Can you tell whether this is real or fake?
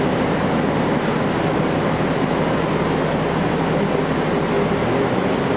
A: real